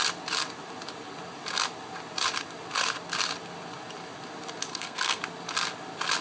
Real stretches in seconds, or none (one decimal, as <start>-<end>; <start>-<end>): 0.0-4.7; 5.2-6.2